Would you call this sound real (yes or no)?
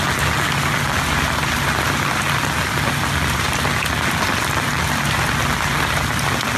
yes